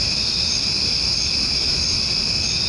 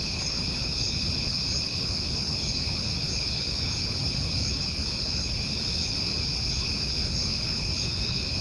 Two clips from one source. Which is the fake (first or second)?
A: second